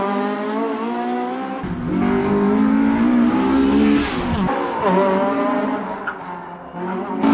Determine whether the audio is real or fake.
real